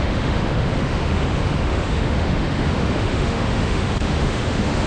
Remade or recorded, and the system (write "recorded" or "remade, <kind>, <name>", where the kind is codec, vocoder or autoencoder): remade, autoencoder, DAC-VAE